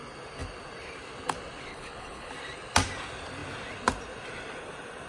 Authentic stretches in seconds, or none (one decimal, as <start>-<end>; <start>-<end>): 0.0-1.7; 2.3-5.1